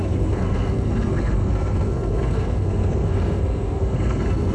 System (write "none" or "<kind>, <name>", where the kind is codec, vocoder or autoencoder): codec, SNAC